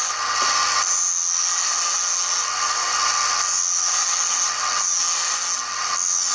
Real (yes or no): yes